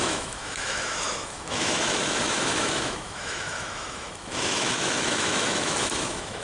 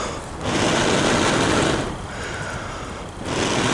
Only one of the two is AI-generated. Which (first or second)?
first